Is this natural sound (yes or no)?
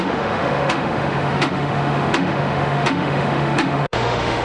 no